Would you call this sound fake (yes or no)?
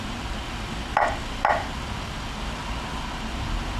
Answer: no